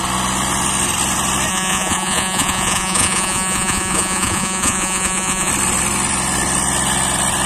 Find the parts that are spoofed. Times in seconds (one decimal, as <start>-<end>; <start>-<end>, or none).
1.5-5.5